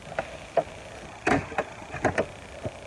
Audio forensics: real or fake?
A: real